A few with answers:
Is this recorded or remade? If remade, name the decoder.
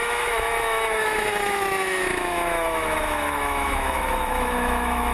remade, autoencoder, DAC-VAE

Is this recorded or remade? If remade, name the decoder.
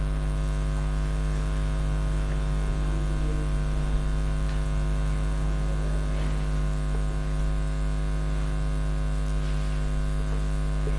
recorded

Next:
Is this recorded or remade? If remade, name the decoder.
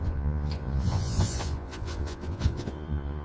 remade, vocoder, Vocos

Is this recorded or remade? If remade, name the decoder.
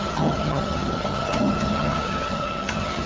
remade, vocoder, HiFi-GAN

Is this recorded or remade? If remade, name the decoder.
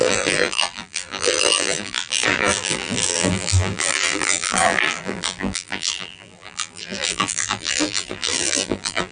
remade, vocoder, BigVGAN v2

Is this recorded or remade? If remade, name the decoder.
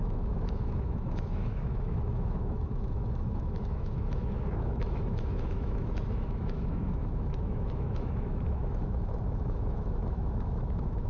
remade, autoencoder, DAC-VAE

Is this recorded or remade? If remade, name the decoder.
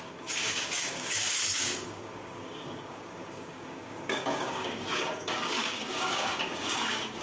remade, codec, DAC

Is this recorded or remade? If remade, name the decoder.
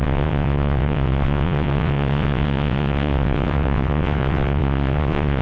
remade, vocoder, WaveNeXt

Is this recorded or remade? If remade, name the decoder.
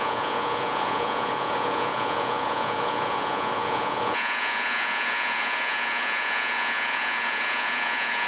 remade, vocoder, Vocos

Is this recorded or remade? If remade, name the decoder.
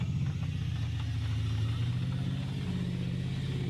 recorded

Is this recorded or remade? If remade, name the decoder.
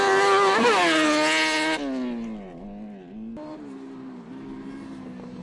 recorded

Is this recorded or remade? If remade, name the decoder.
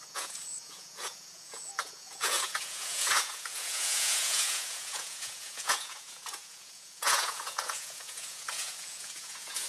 remade, vocoder, Vocos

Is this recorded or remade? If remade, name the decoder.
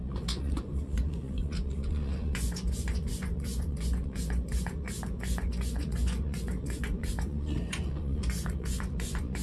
remade, vocoder, Vocos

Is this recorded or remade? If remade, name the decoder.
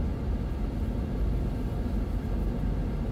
recorded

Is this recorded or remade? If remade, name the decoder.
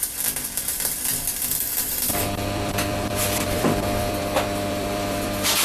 remade, vocoder, BigVGAN v2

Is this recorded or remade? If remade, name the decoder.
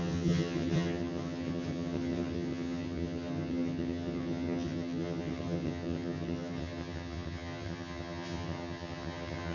remade, vocoder, HiFi-GAN